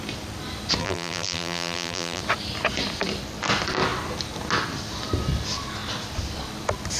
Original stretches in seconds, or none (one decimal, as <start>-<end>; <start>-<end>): 0.0-0.8; 2.2-7.0